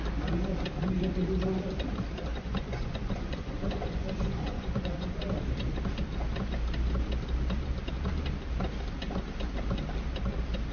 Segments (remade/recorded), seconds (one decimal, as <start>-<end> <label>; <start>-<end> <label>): 0.0-2.3 recorded; 2.3-5.2 remade; 5.2-10.7 recorded